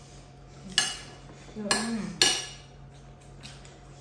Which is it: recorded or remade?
recorded